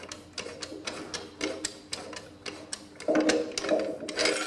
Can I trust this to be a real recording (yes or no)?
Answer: yes